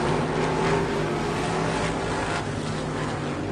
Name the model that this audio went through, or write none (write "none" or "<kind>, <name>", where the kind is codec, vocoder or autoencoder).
none